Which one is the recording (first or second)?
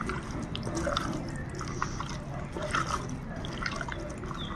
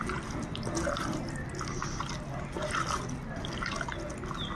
second